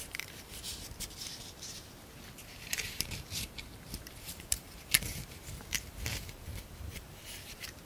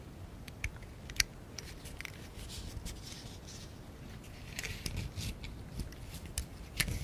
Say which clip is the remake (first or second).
first